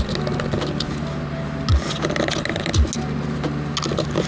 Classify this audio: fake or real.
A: real